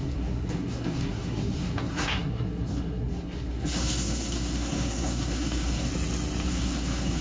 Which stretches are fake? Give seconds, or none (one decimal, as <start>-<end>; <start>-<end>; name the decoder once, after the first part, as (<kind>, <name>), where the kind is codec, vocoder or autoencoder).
0.0-5.9 (codec, SNAC); 6.5-7.2